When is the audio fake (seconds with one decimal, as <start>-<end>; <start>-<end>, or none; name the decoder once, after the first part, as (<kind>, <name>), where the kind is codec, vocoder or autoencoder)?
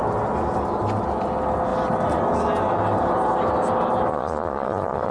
4.1-5.1 (vocoder, Vocos)